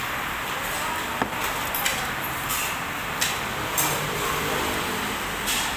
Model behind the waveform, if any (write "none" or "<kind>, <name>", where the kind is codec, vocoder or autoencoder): none